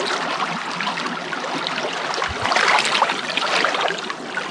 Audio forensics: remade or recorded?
recorded